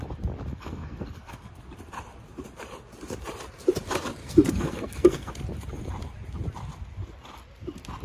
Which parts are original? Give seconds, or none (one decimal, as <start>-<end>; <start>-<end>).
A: 0.0-0.5; 1.5-4.2; 5.3-8.0